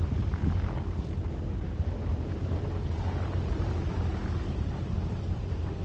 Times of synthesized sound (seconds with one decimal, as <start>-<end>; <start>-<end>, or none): 2.0-5.8